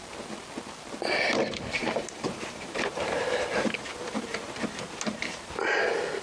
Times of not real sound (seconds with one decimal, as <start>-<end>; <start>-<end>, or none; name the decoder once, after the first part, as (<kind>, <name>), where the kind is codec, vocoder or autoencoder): 1.8-5.5 (vocoder, BigVGAN v2)